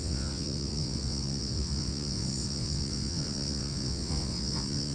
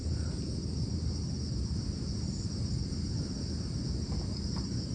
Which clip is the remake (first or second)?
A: first